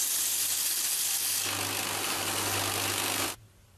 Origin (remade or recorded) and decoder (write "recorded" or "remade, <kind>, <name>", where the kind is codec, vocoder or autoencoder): recorded